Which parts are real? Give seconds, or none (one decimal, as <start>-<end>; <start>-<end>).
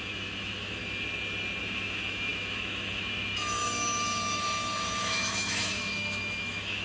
0.8-1.6